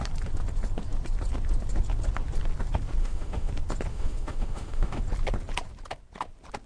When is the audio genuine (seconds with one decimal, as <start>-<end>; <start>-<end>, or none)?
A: 0.0-3.0; 3.5-3.9; 5.0-6.7

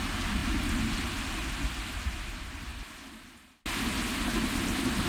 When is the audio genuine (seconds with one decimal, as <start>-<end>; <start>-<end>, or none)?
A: 0.0-5.1